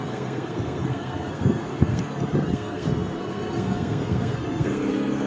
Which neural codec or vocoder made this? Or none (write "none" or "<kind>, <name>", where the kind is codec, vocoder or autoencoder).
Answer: codec, SNAC